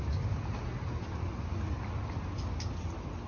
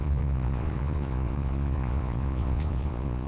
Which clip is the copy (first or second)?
second